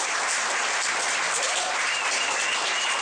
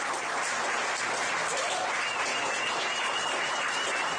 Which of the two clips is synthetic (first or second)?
first